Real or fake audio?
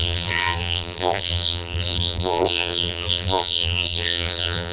fake